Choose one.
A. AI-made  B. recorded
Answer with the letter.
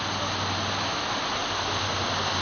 B